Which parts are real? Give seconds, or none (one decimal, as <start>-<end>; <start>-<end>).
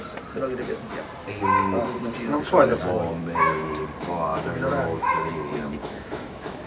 0.0-3.2; 3.8-4.3; 5.3-5.8